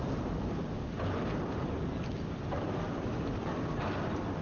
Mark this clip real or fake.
fake